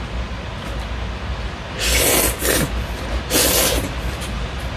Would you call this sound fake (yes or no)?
no